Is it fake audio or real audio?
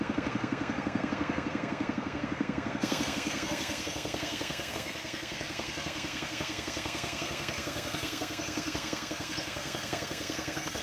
fake